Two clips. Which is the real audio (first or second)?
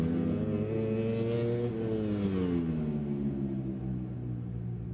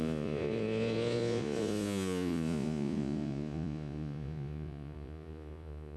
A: first